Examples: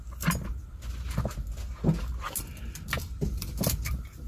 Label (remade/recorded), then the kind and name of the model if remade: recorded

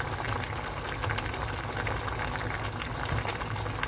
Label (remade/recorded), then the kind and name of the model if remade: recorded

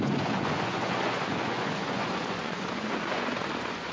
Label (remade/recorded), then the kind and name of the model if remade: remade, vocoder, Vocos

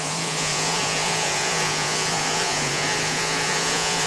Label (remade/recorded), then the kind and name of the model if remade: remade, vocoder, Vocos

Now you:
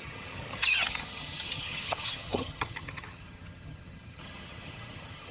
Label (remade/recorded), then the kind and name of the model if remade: remade, vocoder, HiFi-GAN